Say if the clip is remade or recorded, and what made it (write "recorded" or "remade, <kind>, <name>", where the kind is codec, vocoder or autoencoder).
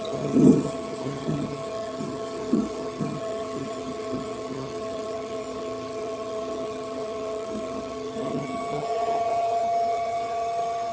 remade, vocoder, HiFi-GAN